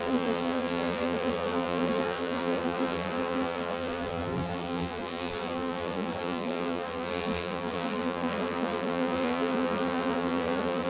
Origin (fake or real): fake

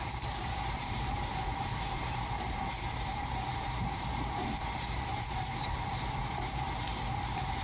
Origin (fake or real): fake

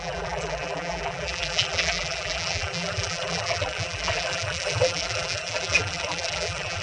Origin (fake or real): fake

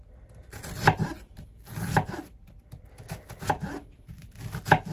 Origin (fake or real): real